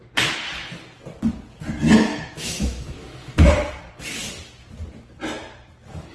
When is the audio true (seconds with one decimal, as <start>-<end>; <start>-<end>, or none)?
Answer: 0.0-2.1; 3.5-6.1